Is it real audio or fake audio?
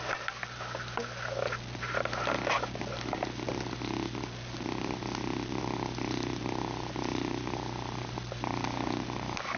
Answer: real